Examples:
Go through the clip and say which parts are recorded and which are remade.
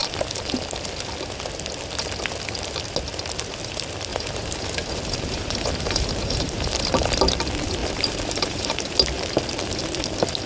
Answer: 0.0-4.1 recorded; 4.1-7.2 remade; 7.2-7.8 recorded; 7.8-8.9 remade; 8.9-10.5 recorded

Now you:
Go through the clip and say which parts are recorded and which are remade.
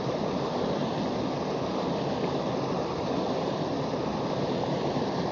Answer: 0.0-0.8 remade; 0.8-4.0 recorded; 4.0-5.3 remade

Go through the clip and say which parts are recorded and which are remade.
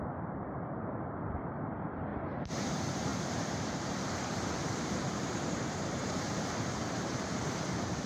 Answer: 0.0-8.1 remade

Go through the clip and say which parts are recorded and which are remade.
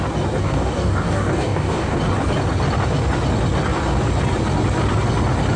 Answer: 0.0-0.4 recorded; 0.4-2.0 remade; 2.0-5.6 recorded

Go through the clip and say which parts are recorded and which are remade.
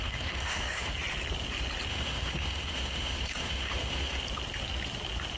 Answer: 0.0-0.9 remade; 0.9-1.9 recorded; 1.9-4.2 remade; 4.2-5.4 recorded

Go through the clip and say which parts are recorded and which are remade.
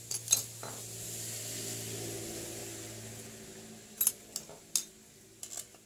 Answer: 0.0-5.9 recorded